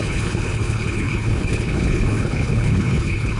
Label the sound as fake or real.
fake